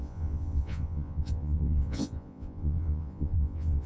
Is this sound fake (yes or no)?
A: yes